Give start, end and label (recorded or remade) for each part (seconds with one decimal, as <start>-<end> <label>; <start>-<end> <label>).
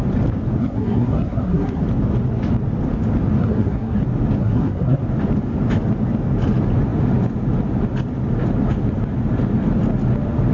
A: 0.0-0.6 recorded; 0.6-1.8 remade; 1.8-3.4 recorded; 3.4-4.0 remade; 4.0-4.4 recorded; 4.4-5.0 remade; 5.0-10.5 recorded